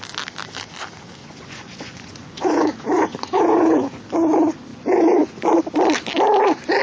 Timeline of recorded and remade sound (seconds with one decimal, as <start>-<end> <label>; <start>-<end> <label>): 0.0-1.2 recorded; 1.2-4.0 remade; 4.0-4.7 recorded; 4.7-5.6 remade; 5.6-6.8 recorded

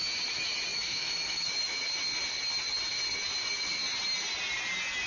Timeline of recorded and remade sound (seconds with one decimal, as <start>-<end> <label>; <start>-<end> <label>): 0.0-0.7 recorded; 0.7-1.8 remade; 1.8-5.1 recorded

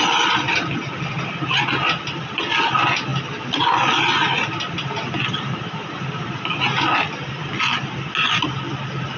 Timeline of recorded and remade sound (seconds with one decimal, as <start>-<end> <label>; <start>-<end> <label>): 0.0-9.2 recorded

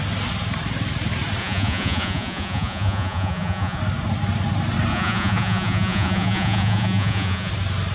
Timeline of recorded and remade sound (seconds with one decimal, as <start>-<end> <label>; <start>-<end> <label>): 0.0-1.4 recorded; 1.4-3.8 remade; 3.8-4.9 recorded; 4.9-7.5 remade; 7.5-7.9 recorded

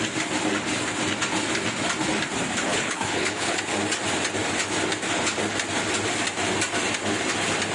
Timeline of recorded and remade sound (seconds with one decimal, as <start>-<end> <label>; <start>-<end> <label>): 0.0-2.7 recorded; 2.7-3.6 remade; 3.6-7.7 recorded

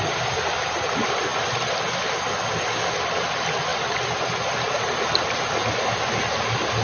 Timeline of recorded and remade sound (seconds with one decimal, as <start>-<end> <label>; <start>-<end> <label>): 0.0-6.8 recorded

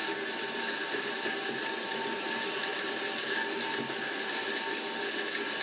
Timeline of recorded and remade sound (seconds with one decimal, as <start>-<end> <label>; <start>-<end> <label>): 0.0-5.6 recorded